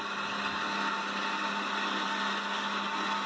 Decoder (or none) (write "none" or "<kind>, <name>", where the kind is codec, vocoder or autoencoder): none